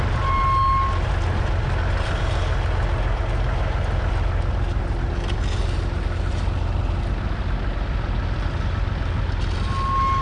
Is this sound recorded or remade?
recorded